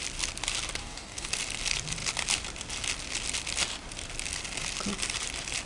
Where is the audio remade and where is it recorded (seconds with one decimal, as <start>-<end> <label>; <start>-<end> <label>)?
0.0-0.8 recorded; 0.8-1.3 remade; 1.3-5.7 recorded